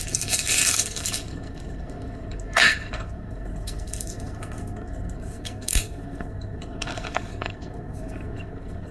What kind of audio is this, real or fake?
fake